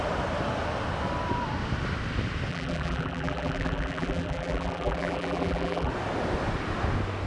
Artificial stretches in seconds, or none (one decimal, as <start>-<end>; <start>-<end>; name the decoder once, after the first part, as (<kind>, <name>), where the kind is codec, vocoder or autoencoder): 2.5-5.9 (vocoder, BigVGAN v2)